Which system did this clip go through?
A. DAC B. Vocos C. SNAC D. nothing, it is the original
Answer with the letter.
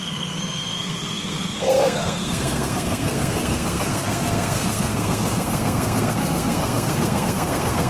C